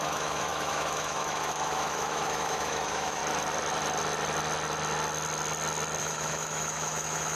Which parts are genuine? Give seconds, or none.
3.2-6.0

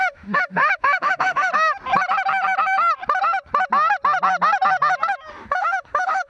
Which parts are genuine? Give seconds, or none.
1.5-5.3

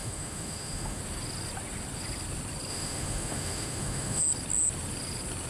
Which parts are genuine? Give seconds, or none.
1.0-2.7; 4.2-5.5

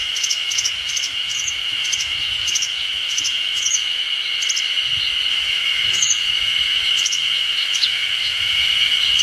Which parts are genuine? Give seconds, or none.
4.0-5.3

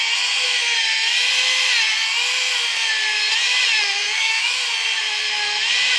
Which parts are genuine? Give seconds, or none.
0.0-4.0; 4.6-6.0

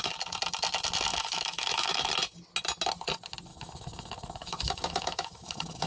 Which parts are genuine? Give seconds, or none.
0.0-1.1; 2.1-3.5

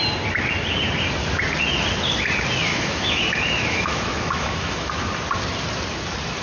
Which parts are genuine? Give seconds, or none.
0.0-2.7; 4.9-6.4

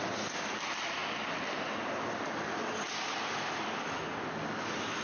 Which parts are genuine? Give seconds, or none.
0.0-5.0